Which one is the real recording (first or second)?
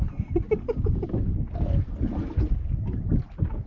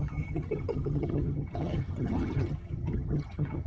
first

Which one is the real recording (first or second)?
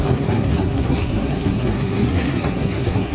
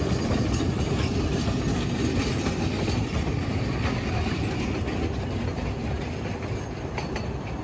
second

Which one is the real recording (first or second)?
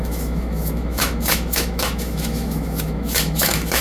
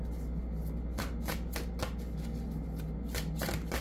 second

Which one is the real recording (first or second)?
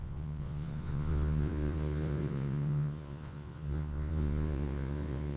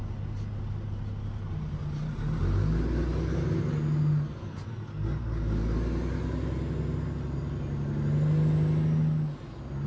second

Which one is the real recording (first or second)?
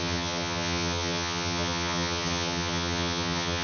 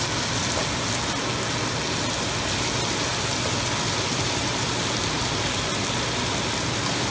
second